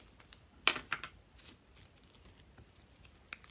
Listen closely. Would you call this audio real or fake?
real